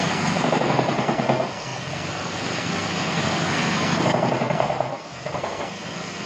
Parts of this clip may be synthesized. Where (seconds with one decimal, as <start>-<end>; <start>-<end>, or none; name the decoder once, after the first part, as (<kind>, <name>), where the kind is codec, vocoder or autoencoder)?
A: 0.0-6.3 (codec, SNAC)